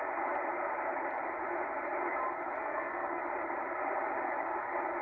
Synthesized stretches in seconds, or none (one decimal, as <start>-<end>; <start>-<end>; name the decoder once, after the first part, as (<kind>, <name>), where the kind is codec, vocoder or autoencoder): 2.6-3.2 (codec, SNAC)